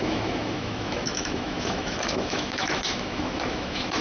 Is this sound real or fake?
fake